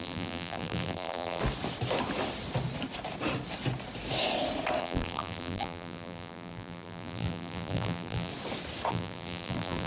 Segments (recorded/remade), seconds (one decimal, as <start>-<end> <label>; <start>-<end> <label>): 0.0-1.4 remade; 1.4-4.8 recorded; 4.8-8.3 remade; 8.3-8.9 recorded; 8.9-9.9 remade